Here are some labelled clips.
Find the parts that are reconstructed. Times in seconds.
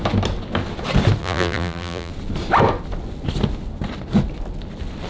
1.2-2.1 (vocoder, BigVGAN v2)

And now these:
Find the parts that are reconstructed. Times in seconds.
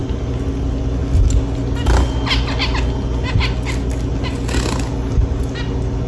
none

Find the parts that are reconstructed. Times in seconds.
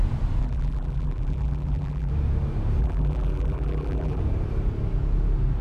0.4-2.1 (vocoder, BigVGAN v2); 2.8-4.2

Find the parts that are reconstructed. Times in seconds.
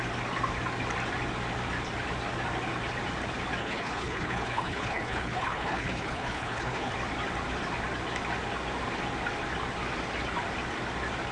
3.6-6.9 (codec, HILCodec)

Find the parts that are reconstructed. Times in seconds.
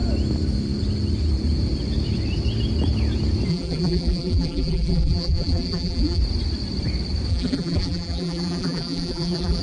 3.5-6.2 (vocoder, BigVGAN v2); 7.3-9.6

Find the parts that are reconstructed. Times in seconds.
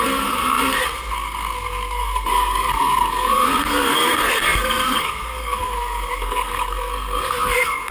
0.0-7.9 (codec, SNAC)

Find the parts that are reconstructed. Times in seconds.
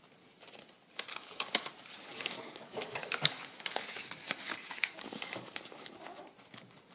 1.1-1.7 (codec, DAC); 2.1-6.2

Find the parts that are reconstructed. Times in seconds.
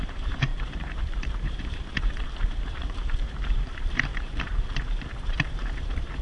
0.0-6.2 (vocoder, BigVGAN v2)